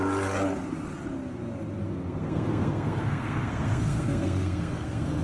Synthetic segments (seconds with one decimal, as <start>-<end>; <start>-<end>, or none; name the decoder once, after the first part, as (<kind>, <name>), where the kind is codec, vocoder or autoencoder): 1.8-5.2 (codec, SNAC)